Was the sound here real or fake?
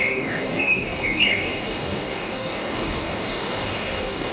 fake